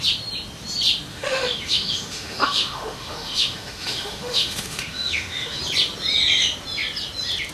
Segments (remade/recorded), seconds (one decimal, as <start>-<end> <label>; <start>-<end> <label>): 0.0-1.1 recorded; 1.1-5.6 remade; 5.6-7.5 recorded